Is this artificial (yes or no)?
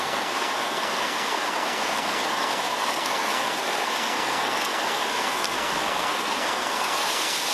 yes